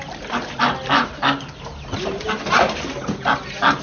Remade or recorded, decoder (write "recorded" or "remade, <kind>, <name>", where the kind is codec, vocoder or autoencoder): recorded